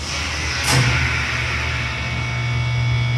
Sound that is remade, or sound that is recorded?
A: recorded